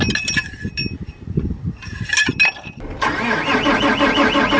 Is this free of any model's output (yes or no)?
yes